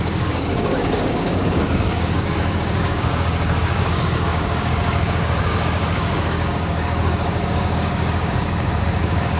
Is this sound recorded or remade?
remade